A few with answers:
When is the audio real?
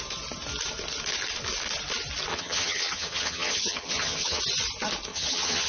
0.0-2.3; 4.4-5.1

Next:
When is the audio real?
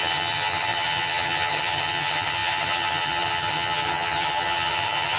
none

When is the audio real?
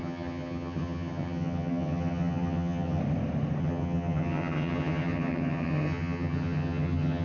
3.0-3.6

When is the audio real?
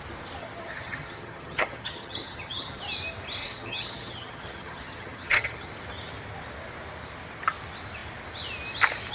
0.0-0.4; 2.8-3.4; 5.7-9.1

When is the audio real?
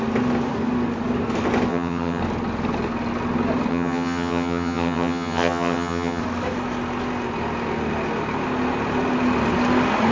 0.0-1.7; 2.2-3.7; 6.2-10.1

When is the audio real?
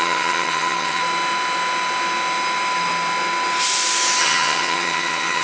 1.0-4.2